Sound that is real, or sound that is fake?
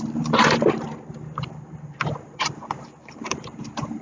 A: fake